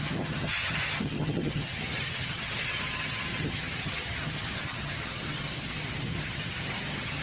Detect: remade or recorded remade